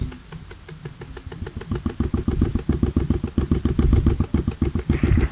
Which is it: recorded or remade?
recorded